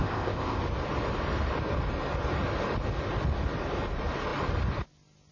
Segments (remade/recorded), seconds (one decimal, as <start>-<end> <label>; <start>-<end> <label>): 0.0-0.6 remade; 0.6-5.3 recorded